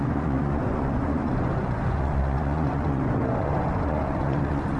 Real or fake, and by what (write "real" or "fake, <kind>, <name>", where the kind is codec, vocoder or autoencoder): fake, vocoder, Vocos